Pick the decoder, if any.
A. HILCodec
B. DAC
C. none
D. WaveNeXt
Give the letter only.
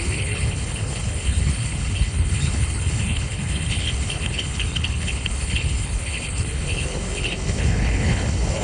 A